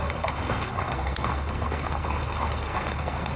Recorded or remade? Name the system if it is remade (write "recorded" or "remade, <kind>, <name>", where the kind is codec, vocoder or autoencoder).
remade, codec, SNAC